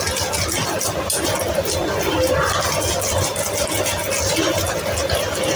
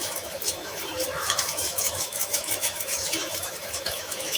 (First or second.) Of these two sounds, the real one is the first